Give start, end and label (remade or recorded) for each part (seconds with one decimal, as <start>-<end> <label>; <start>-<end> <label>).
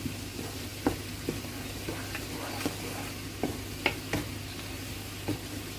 0.0-5.8 recorded